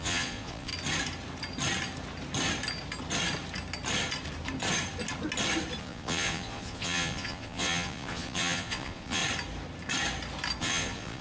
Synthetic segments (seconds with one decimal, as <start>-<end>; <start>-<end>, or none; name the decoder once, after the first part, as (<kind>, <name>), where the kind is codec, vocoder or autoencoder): 0.0-0.7 (vocoder, Vocos); 5.8-9.2; 10.6-11.2